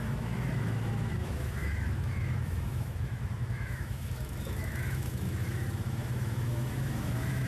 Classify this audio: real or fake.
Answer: fake